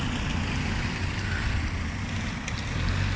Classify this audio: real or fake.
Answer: real